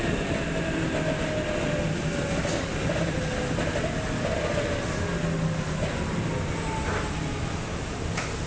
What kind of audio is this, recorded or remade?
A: recorded